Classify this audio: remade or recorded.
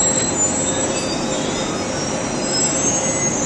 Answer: recorded